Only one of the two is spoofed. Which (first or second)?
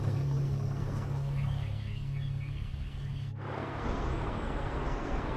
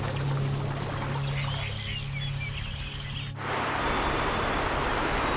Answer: first